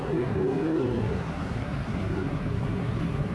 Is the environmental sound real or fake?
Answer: fake